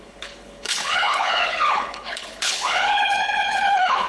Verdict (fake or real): fake